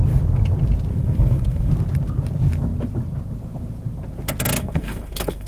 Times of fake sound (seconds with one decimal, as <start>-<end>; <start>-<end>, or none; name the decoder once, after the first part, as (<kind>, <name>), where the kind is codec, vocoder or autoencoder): 0.9-1.7 (codec, SNAC); 4.6-5.5